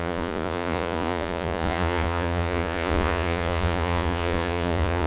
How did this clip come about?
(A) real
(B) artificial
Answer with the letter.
B